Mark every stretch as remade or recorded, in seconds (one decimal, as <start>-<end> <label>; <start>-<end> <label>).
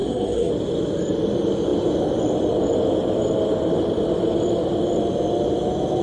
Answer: 0.0-0.5 remade; 0.5-6.0 recorded